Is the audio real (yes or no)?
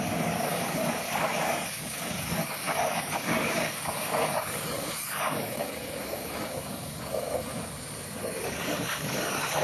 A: no